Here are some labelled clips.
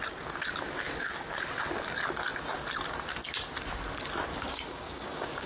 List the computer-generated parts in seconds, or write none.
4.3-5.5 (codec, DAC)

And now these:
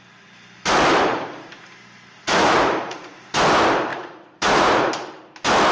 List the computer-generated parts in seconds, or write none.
1.1-1.6 (vocoder, Vocos); 2.2-3.3; 3.9-4.9

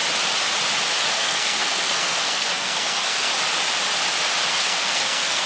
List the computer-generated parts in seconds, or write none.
1.1-3.3 (codec, SNAC); 4.5-5.5

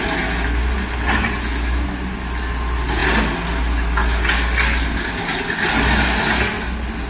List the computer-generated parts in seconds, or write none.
none

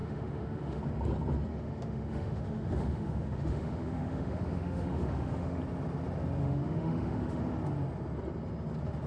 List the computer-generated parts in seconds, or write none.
0.0-0.8 (autoencoder, DAC-VAE); 1.5-5.6; 6.4-7.4